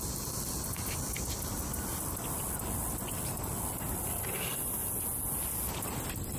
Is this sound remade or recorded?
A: remade